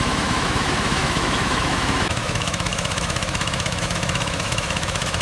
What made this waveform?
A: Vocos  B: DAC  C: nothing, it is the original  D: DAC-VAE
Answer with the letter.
D